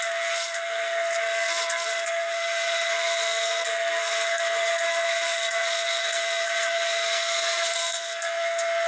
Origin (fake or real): fake